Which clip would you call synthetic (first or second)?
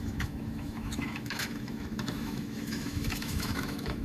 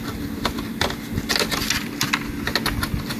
first